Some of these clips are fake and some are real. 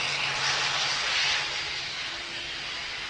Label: real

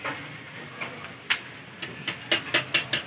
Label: real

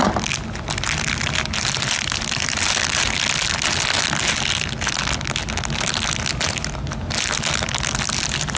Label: real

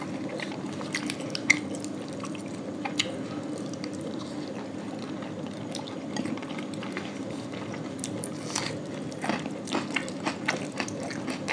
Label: real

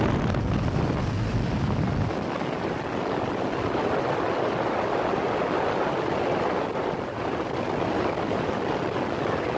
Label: real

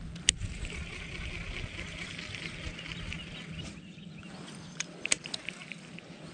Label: real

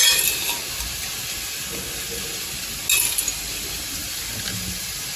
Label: real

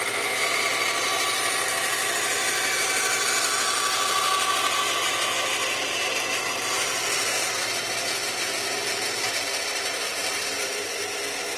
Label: real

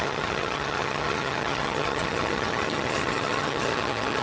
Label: fake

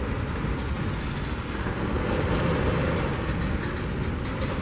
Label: real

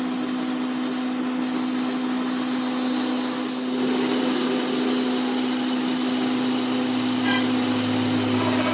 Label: real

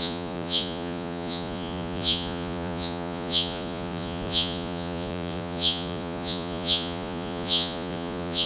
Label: fake